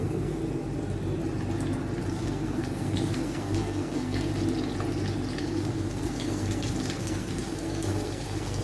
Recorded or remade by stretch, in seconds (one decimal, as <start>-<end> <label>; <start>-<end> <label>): 0.0-0.4 remade; 0.4-2.1 recorded; 2.1-4.3 remade; 4.3-5.4 recorded; 5.4-8.6 remade